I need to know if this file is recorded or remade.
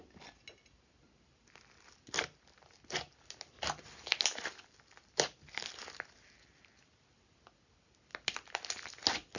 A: recorded